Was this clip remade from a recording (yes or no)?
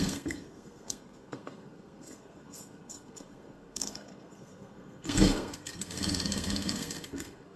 yes